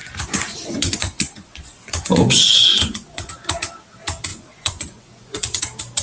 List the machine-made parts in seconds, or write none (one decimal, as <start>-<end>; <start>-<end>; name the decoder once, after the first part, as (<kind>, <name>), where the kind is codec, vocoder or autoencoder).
0.0-3.3 (vocoder, Vocos); 4.3-5.6